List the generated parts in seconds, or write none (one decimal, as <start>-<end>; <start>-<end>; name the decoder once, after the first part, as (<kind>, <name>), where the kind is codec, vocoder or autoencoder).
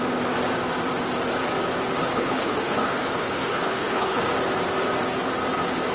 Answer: 2.0-4.2 (codec, HILCodec)